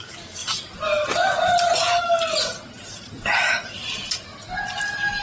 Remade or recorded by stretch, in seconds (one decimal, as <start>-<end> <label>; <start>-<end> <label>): 0.0-5.2 recorded